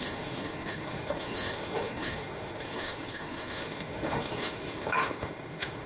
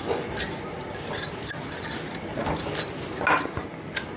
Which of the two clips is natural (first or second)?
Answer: second